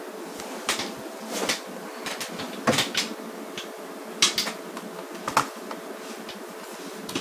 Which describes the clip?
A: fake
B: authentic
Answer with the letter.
B